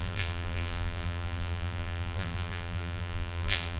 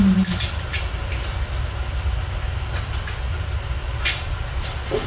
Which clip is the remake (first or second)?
first